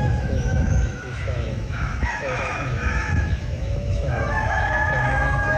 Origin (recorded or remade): remade